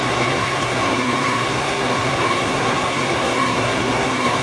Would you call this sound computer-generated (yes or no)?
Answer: yes